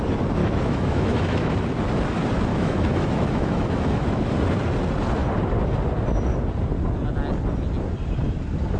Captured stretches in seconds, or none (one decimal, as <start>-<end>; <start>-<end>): 0.0-0.4; 1.5-2.5; 4.3-8.8